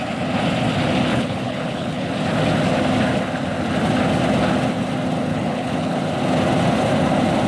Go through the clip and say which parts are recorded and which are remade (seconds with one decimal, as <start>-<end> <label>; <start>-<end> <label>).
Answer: 0.0-1.1 recorded; 1.1-2.1 remade; 2.1-5.3 recorded; 5.3-6.0 remade; 6.0-7.5 recorded